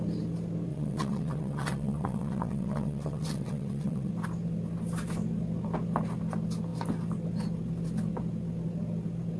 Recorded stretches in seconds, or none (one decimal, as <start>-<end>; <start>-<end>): 0.0-0.7; 4.1-9.4